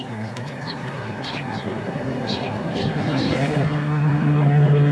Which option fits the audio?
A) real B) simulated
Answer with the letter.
B